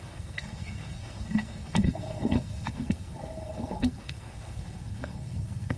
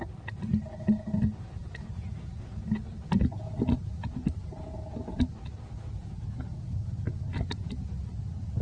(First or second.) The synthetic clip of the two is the first